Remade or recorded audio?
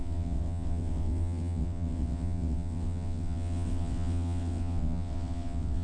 remade